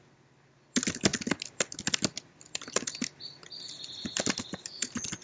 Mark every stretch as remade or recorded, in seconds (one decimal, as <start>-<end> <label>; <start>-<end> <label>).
0.0-5.2 recorded